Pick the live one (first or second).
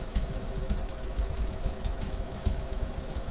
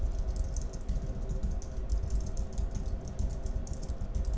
second